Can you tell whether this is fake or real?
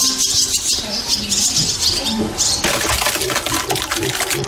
real